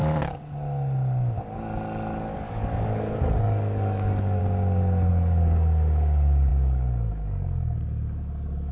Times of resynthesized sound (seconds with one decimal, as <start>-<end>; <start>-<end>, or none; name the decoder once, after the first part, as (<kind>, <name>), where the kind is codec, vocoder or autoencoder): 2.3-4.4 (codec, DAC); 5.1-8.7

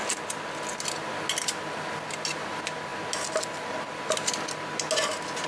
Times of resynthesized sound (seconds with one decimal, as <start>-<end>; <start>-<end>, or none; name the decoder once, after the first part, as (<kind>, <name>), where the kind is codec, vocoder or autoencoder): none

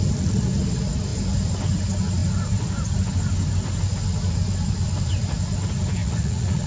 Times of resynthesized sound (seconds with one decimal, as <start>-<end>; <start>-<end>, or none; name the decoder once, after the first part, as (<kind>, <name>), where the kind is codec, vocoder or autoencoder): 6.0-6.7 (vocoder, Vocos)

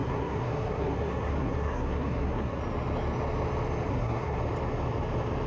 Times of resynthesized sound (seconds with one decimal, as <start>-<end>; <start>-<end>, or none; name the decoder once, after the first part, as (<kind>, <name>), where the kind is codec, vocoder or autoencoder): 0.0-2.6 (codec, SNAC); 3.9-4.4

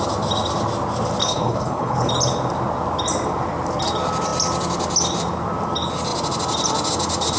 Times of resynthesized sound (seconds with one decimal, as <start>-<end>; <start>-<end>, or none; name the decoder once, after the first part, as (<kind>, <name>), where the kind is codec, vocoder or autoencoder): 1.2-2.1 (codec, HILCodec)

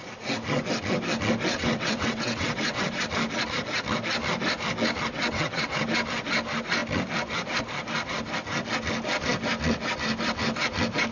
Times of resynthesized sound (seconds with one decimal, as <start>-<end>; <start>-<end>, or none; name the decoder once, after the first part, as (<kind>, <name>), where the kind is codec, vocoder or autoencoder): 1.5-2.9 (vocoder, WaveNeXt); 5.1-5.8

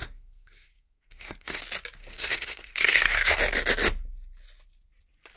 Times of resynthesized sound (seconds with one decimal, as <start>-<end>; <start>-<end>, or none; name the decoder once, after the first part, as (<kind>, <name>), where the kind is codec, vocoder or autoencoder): 0.0-1.6 (codec, SNAC); 2.0-3.4